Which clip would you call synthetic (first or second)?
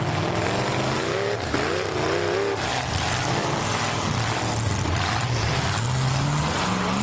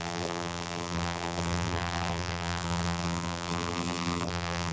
second